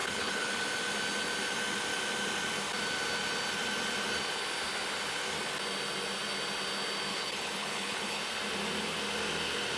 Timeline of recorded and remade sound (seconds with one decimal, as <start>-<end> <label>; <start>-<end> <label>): 0.0-0.5 remade; 0.5-7.1 recorded; 7.1-8.2 remade; 8.2-9.8 recorded